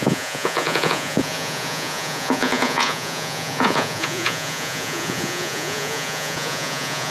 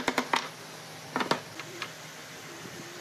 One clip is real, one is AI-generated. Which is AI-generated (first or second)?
first